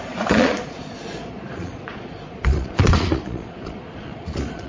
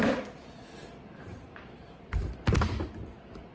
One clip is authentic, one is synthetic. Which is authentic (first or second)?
second